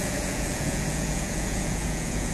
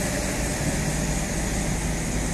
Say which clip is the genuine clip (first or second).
second